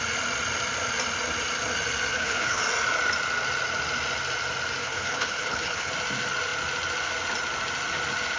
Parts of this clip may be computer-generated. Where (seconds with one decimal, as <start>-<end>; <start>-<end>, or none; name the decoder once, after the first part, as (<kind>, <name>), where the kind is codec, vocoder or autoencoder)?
2.1-2.6 (codec, HILCodec); 4.8-5.9